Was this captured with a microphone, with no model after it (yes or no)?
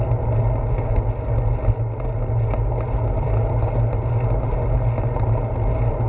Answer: yes